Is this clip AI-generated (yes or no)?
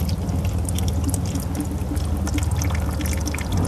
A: no